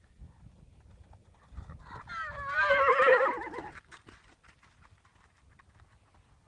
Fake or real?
real